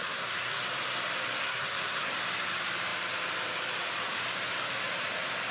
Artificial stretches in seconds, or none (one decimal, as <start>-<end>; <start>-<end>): 0.0-0.6; 1.4-2.1